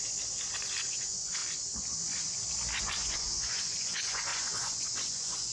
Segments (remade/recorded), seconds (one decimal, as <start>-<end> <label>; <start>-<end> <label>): 0.0-0.8 recorded; 0.8-1.4 remade; 1.4-2.8 recorded; 2.8-5.5 remade

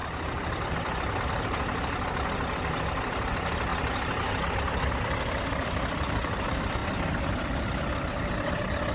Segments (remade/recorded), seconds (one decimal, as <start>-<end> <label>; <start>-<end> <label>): 0.0-8.9 recorded

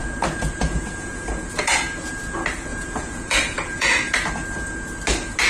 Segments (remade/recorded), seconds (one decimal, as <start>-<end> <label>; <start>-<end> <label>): 0.0-1.8 remade; 1.8-2.7 recorded; 2.7-4.1 remade; 4.1-5.5 recorded

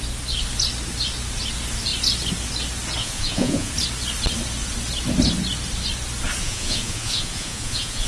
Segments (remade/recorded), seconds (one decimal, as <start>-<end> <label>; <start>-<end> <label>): 0.0-3.0 recorded; 3.0-3.7 remade; 3.7-6.4 recorded; 6.4-8.1 remade